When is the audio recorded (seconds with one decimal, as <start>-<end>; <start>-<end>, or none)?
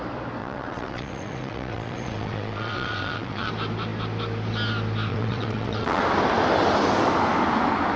0.0-0.4; 3.5-5.1; 6.0-8.0